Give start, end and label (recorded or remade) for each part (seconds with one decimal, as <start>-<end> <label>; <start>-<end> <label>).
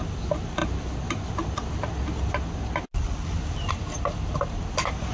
0.0-5.1 recorded